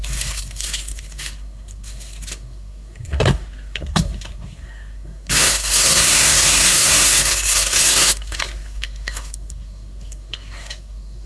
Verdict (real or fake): fake